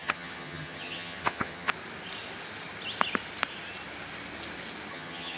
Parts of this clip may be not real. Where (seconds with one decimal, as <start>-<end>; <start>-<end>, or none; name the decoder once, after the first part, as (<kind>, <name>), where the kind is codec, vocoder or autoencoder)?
0.0-1.7 (vocoder, HiFi-GAN); 4.9-5.4